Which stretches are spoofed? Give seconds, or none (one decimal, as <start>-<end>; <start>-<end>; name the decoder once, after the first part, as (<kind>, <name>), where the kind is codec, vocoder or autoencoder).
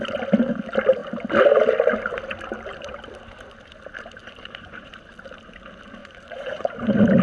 4.2-4.9 (vocoder, Vocos); 6.0-6.7